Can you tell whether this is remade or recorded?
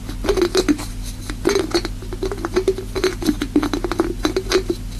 recorded